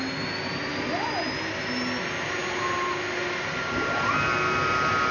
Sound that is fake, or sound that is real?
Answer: real